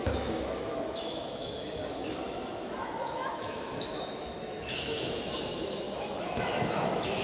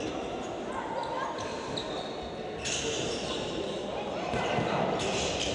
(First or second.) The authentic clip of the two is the second